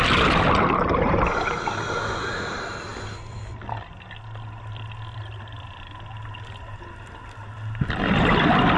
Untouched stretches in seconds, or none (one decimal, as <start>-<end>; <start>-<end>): 0.0-8.8